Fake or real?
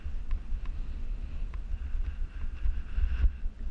real